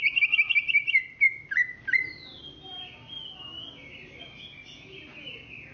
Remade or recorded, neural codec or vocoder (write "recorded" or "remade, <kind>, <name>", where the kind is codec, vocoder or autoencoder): recorded